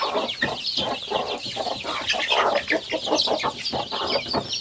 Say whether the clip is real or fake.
real